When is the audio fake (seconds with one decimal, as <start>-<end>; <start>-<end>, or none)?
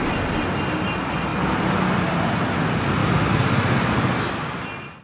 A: none